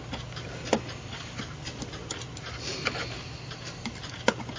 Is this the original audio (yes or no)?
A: yes